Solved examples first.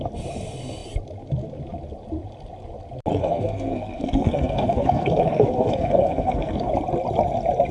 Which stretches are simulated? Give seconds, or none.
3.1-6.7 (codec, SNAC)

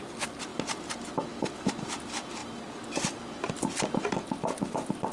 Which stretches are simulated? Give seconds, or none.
2.4-3.5 (vocoder, BigVGAN v2)

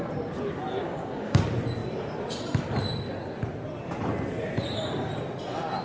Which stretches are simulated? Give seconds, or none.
0.8-1.4 (codec, DAC)

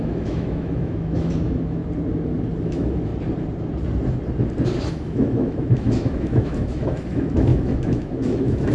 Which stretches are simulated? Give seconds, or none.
0.0-1.8 (autoencoder, DAC-VAE); 2.6-3.1; 4.9-8.7

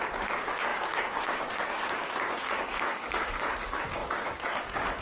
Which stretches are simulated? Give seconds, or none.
0.0-5.0 (codec, DAC)